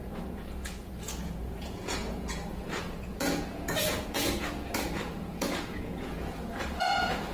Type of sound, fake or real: fake